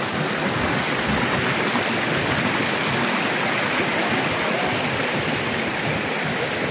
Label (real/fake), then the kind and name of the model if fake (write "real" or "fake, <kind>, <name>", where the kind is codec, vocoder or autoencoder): real